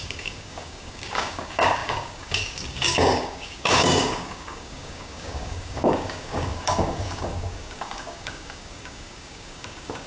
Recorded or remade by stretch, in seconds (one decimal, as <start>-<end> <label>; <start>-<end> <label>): 0.0-10.1 remade